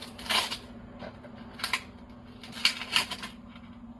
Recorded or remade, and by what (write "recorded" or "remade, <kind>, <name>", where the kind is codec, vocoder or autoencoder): recorded